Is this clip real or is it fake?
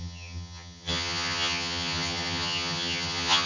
fake